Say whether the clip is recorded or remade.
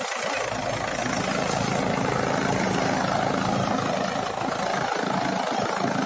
recorded